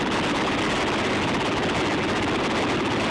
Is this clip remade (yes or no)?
no